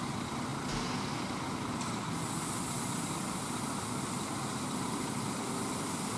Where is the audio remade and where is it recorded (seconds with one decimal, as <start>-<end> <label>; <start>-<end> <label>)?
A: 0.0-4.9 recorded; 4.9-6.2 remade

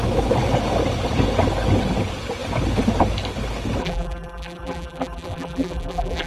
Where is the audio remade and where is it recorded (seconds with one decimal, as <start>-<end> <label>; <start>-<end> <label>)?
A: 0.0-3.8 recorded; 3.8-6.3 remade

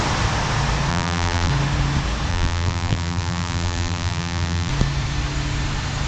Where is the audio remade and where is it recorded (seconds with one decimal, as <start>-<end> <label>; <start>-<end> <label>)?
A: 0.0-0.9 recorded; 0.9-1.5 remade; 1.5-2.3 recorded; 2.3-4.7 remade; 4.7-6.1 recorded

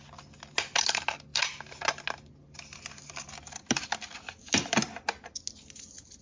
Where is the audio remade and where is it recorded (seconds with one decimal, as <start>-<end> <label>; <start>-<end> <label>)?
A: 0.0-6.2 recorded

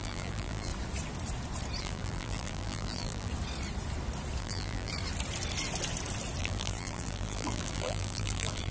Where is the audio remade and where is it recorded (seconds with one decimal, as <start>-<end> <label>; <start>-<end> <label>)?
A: 0.0-0.7 remade; 0.7-1.8 recorded; 1.8-3.3 remade; 3.3-4.4 recorded; 4.4-4.9 remade; 4.9-6.4 recorded; 6.4-8.7 remade

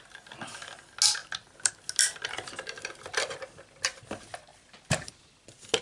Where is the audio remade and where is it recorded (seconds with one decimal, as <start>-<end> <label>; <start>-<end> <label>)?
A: 0.0-1.2 recorded; 1.2-1.7 remade; 1.7-4.5 recorded; 4.5-5.1 remade; 5.1-5.8 recorded

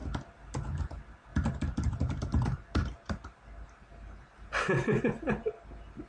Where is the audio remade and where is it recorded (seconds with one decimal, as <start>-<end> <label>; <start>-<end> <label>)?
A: 0.0-6.1 recorded